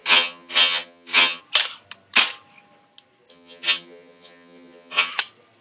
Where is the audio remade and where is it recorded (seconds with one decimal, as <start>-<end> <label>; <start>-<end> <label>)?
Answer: 0.0-1.4 remade; 1.4-3.3 recorded; 3.3-5.1 remade; 5.1-5.6 recorded